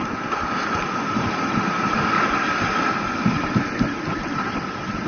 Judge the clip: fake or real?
real